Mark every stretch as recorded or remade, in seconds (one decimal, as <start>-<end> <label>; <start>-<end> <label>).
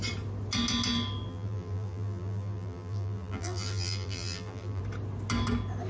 0.0-1.3 recorded; 1.3-4.8 remade; 4.8-5.9 recorded